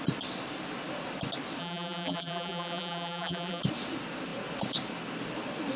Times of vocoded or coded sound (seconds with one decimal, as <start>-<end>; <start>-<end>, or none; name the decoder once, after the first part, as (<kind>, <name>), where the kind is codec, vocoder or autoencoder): 1.6-3.6 (vocoder, BigVGAN v2)